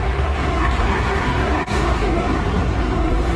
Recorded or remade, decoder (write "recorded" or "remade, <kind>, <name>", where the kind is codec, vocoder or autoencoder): remade, codec, SNAC